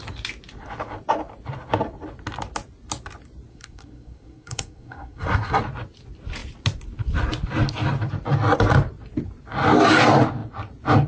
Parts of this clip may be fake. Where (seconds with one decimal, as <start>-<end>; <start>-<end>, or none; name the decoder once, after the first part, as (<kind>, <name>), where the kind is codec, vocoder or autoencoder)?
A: 3.5-5.6 (codec, SNAC)